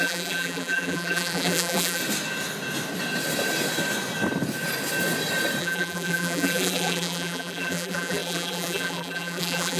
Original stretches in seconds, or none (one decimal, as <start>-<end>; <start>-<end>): 2.0-5.6